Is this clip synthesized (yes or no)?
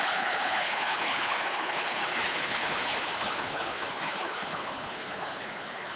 yes